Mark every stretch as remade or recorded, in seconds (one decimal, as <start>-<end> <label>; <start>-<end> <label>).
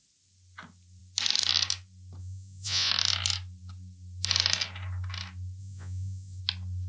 0.0-2.2 recorded; 2.2-2.9 remade; 2.9-5.6 recorded; 5.6-6.4 remade; 6.4-6.9 recorded